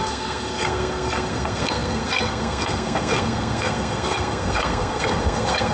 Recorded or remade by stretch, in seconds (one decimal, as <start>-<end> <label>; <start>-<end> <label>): 0.0-5.7 remade